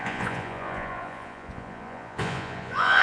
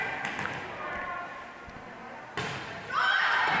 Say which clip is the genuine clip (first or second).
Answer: second